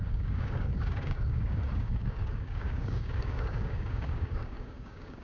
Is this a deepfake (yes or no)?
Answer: yes